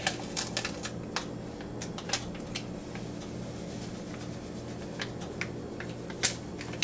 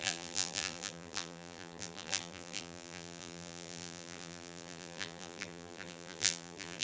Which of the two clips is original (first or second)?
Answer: first